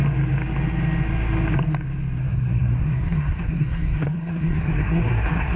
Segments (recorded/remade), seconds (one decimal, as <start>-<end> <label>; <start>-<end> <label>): 0.0-2.2 recorded; 2.2-5.6 remade